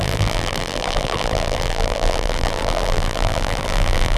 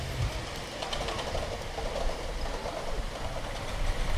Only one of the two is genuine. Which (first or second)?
second